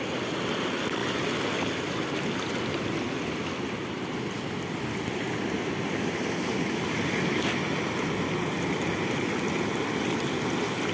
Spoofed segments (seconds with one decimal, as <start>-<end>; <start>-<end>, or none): none